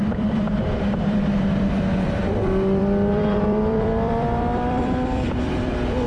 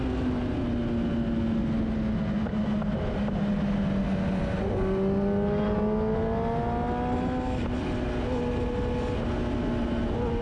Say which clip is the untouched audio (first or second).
second